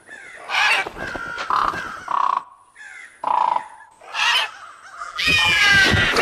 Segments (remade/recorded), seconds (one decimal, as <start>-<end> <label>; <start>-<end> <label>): 0.0-5.0 recorded; 5.0-5.6 remade; 5.6-6.2 recorded